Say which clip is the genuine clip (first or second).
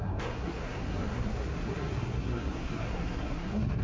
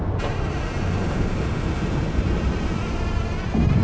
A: second